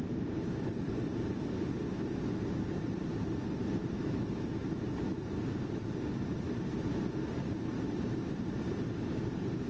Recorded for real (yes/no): no